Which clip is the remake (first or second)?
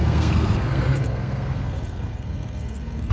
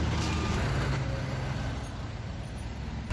first